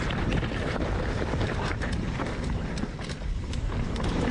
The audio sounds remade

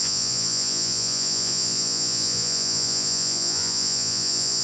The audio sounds remade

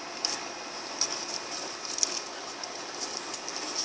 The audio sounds recorded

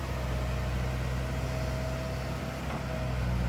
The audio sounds recorded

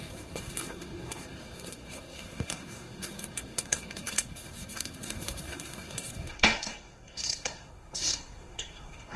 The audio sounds remade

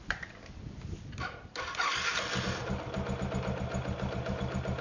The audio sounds recorded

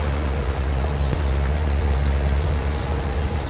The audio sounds remade